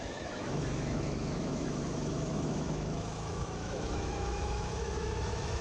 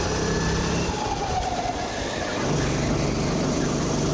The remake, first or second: first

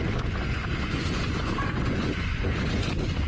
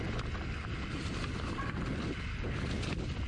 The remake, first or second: first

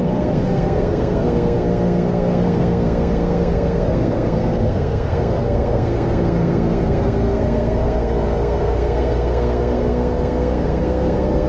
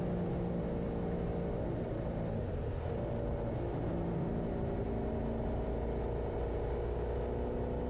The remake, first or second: first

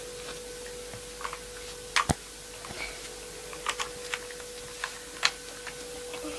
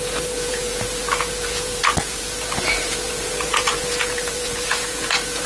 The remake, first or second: second